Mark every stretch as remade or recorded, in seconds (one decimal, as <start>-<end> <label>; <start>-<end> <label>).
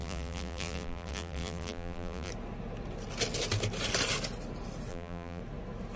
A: 0.0-2.3 remade; 2.3-4.9 recorded; 4.9-5.4 remade; 5.4-6.0 recorded